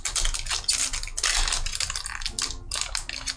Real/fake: real